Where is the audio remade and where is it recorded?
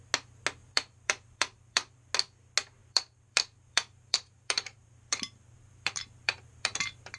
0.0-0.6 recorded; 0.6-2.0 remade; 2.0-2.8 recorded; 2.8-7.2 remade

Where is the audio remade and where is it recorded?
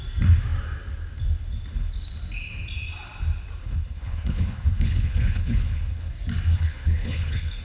0.0-3.6 recorded; 3.6-6.1 remade; 6.1-6.5 recorded; 6.5-7.6 remade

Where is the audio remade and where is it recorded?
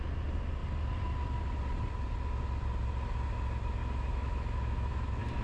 0.0-3.8 recorded; 3.8-5.4 remade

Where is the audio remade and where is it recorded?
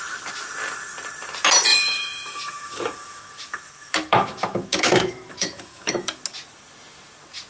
0.0-1.7 recorded; 1.7-6.2 remade; 6.2-7.5 recorded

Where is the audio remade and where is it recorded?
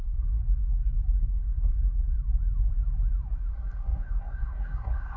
0.0-0.4 remade; 0.4-1.2 recorded; 1.2-2.1 remade; 2.1-3.5 recorded; 3.5-5.2 remade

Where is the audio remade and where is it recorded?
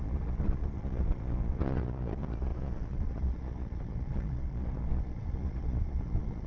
0.0-6.5 remade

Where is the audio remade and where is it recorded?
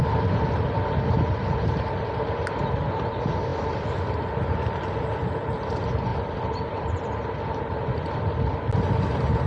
0.0-9.5 recorded